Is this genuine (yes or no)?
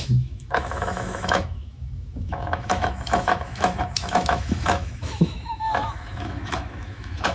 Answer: no